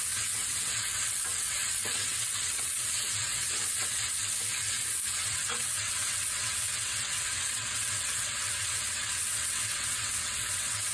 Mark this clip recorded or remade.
remade